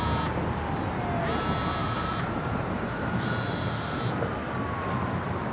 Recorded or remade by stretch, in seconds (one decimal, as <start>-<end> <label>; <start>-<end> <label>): 0.0-1.8 recorded; 1.8-4.0 remade; 4.0-5.5 recorded